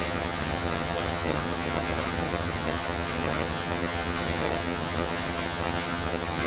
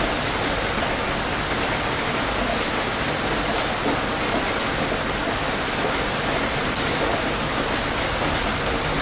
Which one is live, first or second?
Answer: second